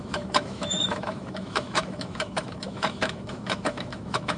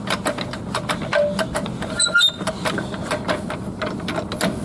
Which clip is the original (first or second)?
second